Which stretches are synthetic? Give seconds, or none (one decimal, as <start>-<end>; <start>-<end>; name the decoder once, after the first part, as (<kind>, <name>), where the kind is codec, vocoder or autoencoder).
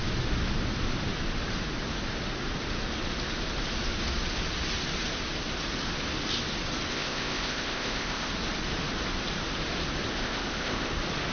6.9-8.3 (codec, ZipCodec); 10.1-10.9